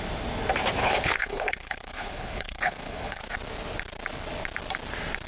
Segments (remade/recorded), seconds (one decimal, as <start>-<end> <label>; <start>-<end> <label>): 0.0-0.8 recorded; 0.8-3.3 remade; 3.3-5.3 recorded